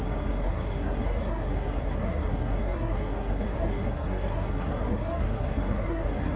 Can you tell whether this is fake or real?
fake